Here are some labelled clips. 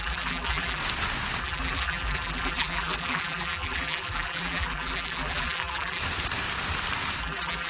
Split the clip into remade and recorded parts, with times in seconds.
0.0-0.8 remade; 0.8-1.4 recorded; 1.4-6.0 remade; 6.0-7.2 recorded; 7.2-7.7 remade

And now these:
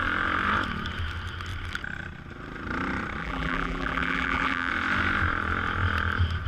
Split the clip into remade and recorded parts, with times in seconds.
0.0-3.2 recorded; 3.2-4.7 remade; 4.7-6.5 recorded

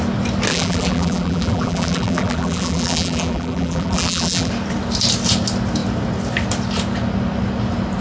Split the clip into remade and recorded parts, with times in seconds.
0.0-0.5 recorded; 0.5-4.5 remade; 4.5-8.0 recorded

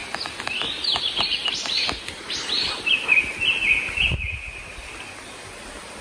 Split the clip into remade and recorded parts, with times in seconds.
0.0-6.0 recorded

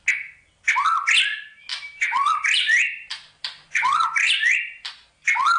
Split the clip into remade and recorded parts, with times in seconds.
0.0-1.7 recorded; 1.7-5.1 remade; 5.1-5.6 recorded

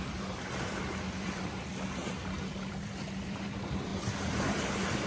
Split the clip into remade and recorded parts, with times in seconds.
0.0-1.7 remade; 1.7-2.8 recorded; 2.8-3.9 remade; 3.9-4.5 recorded; 4.5-5.1 remade

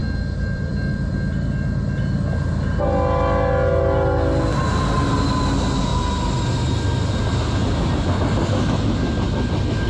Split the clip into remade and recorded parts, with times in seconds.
0.0-9.9 recorded

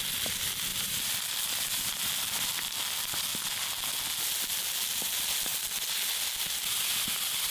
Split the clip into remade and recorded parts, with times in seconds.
0.0-3.3 remade; 3.3-4.2 recorded; 4.2-5.5 remade; 5.5-7.5 recorded